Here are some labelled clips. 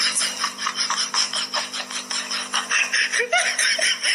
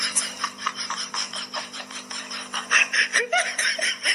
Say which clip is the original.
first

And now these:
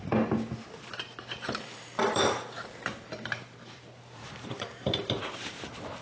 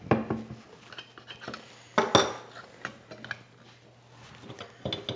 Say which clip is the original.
second